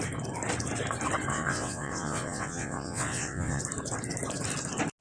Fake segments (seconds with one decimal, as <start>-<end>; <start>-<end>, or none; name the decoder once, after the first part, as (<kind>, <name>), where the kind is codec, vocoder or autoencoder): 1.3-3.6 (vocoder, WaveNeXt)